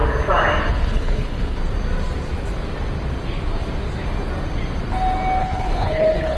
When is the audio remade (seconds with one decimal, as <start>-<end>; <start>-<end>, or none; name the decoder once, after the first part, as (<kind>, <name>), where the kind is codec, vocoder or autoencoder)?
0.7-1.6 (codec, HILCodec); 5.4-6.4